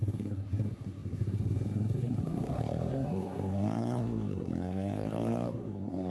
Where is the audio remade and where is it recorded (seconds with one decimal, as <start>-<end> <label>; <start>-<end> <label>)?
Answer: 0.0-6.1 remade